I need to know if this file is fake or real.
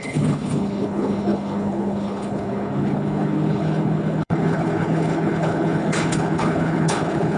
fake